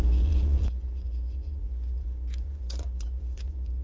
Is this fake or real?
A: fake